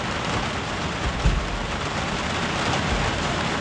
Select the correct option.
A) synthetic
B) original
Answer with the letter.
B